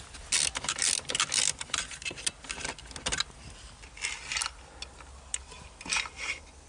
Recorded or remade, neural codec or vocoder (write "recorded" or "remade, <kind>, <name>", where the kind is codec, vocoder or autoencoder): recorded